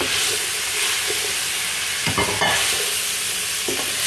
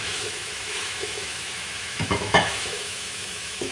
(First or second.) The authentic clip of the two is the first